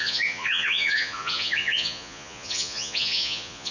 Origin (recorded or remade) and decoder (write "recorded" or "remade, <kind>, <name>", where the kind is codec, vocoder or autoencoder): remade, vocoder, Vocos